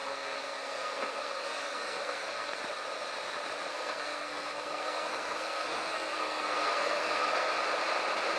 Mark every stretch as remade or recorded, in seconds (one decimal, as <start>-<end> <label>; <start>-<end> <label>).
0.0-2.6 remade; 2.6-3.7 recorded; 3.7-7.5 remade; 7.5-8.4 recorded